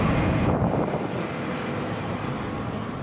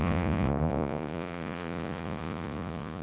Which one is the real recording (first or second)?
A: first